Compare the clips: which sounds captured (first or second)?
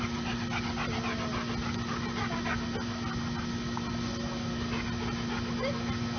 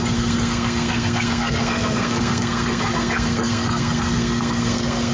first